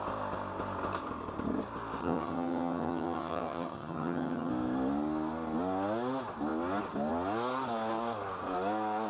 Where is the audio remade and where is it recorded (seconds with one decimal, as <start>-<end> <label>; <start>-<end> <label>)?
0.0-2.0 recorded; 2.0-4.5 remade; 4.5-9.1 recorded